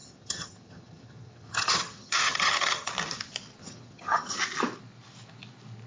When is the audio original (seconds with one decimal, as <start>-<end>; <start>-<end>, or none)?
2.9-3.6; 4.4-5.9